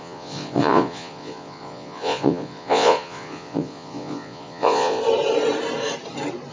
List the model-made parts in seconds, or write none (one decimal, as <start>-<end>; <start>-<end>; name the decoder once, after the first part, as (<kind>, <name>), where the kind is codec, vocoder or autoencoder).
0.0-5.0 (vocoder, Vocos)